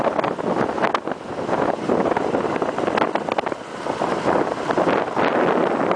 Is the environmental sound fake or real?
real